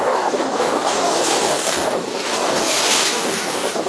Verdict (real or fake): fake